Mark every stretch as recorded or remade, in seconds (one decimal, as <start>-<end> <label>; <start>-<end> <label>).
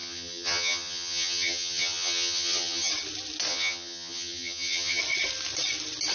0.0-2.9 remade; 2.9-3.5 recorded; 3.5-5.0 remade; 5.0-6.1 recorded